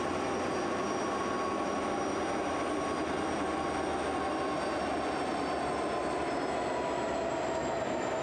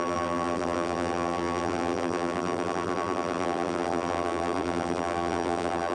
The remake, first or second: second